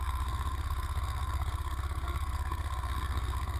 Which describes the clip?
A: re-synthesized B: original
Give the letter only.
A